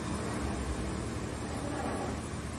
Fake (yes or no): no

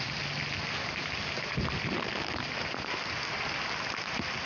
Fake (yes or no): no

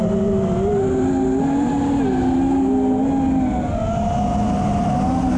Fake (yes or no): no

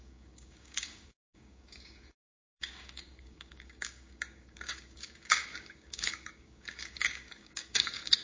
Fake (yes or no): yes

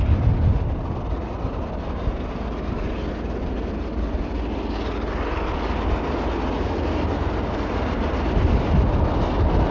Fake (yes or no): no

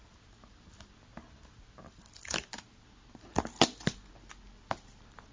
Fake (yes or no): no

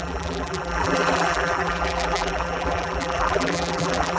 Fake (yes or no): yes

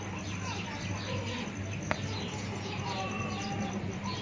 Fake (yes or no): no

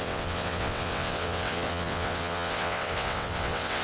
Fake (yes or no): yes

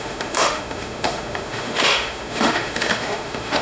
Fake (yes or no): yes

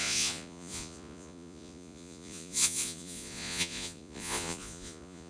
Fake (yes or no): yes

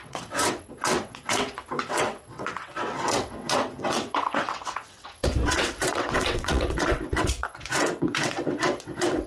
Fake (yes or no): yes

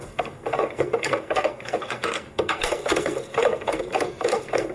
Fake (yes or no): yes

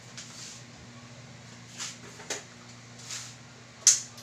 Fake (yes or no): no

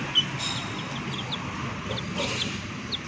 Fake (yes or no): no